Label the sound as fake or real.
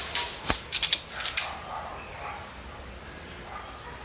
real